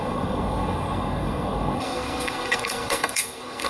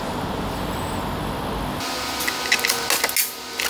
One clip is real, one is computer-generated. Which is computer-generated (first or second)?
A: first